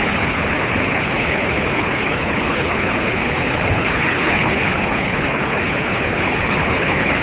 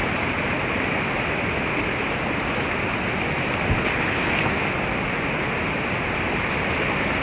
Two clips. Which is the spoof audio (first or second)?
first